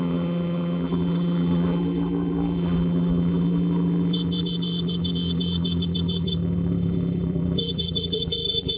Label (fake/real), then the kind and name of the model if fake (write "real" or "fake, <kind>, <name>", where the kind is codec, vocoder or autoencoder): fake, vocoder, BigVGAN v2